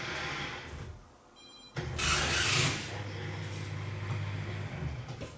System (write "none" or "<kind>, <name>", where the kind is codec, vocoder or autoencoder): none